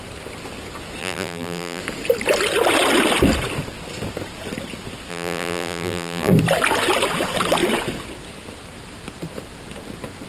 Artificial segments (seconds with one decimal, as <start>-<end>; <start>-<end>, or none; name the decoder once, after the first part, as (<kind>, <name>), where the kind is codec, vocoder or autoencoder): 1.0-1.8 (vocoder, BigVGAN v2); 5.1-6.3